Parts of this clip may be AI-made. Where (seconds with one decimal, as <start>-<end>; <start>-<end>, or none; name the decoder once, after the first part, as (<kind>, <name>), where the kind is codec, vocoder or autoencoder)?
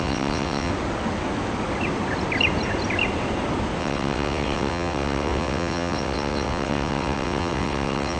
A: 0.0-0.7 (vocoder, WaveNeXt); 3.8-8.2